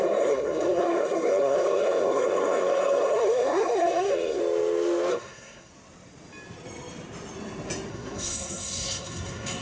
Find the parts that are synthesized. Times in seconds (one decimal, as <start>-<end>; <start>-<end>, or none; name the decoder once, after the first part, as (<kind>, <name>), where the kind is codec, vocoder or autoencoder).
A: 0.0-4.4 (codec, SNAC); 5.1-5.7; 7.9-9.6